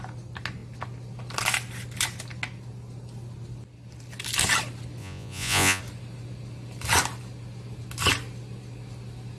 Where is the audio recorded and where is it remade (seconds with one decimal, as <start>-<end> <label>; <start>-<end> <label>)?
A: 0.0-5.0 recorded; 5.0-5.8 remade; 5.8-9.4 recorded